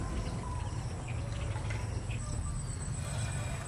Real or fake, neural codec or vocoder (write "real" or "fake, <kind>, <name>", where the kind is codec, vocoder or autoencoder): real